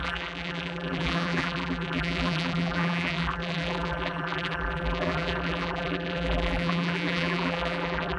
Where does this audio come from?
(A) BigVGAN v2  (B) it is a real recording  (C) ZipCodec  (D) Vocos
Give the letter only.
A